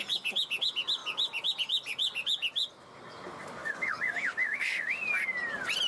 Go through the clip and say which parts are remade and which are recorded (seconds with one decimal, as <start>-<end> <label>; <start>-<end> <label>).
0.0-3.6 recorded; 3.6-5.2 remade; 5.2-5.9 recorded